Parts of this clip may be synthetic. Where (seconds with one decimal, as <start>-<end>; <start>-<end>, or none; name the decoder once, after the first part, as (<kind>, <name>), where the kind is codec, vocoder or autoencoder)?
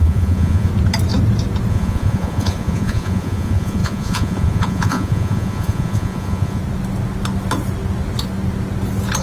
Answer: 0.0-0.7 (vocoder, Vocos); 1.7-6.6